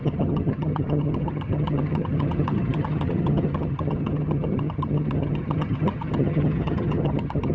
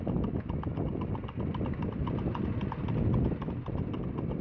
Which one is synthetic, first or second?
first